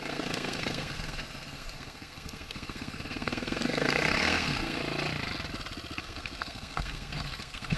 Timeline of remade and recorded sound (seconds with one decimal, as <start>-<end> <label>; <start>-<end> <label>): 0.0-4.8 remade; 4.8-6.0 recorded; 6.0-7.8 remade